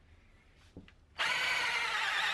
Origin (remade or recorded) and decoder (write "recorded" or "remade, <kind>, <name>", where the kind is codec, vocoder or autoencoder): recorded